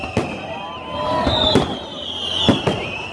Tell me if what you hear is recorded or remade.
recorded